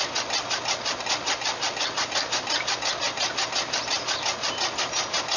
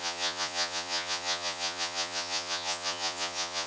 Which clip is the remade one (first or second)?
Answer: second